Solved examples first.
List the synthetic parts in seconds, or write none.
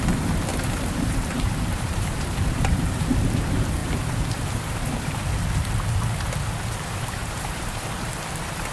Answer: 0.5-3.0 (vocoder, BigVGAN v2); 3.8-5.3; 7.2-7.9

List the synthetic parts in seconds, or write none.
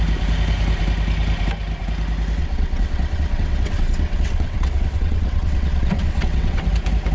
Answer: 2.4-6.6 (vocoder, WaveNeXt)